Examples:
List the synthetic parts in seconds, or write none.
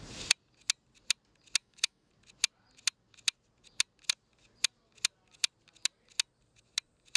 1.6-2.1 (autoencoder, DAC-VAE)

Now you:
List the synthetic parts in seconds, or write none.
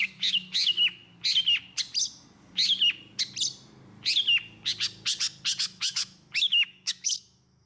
0.0-1.0 (autoencoder, DAC-VAE); 5.6-7.7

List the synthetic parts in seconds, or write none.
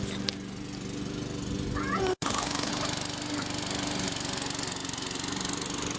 2.1-2.7 (autoencoder, DAC-VAE)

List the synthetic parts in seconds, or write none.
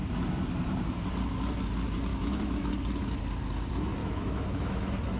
2.1-2.7 (autoencoder, DAC-VAE); 4.0-5.2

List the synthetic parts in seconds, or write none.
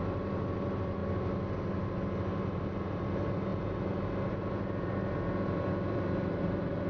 none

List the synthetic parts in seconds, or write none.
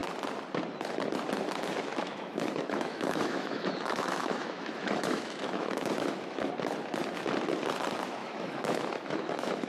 1.9-6.5 (autoencoder, DAC-VAE); 8.2-9.7